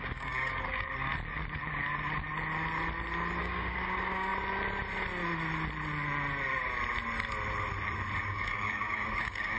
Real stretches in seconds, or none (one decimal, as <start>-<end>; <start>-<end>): 1.1-3.4; 4.3-8.2